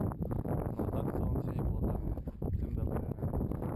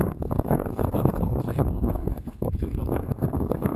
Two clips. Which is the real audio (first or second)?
first